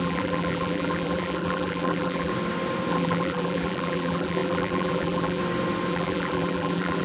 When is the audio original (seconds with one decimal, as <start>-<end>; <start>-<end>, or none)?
2.3-2.9; 5.4-5.9